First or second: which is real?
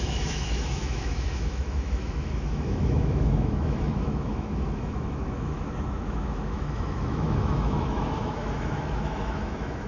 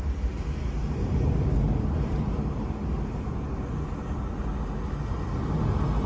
second